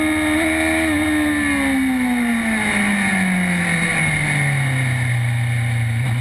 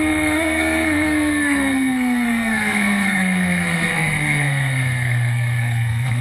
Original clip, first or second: first